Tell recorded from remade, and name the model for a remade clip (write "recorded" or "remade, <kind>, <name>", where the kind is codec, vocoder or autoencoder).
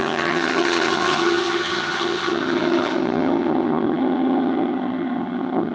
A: remade, vocoder, HiFi-GAN